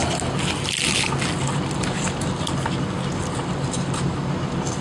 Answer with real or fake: real